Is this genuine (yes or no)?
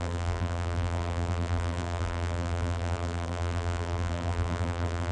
no